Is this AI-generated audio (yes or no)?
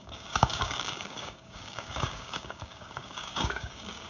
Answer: yes